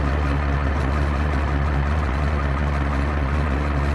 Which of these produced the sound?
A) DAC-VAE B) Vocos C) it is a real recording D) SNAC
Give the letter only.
B